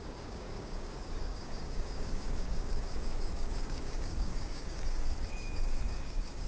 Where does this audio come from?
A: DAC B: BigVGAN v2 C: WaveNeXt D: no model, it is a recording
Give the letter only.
A